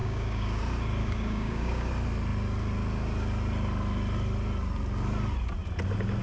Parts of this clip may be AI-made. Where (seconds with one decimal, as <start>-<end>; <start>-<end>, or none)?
0.0-0.6; 1.0-1.9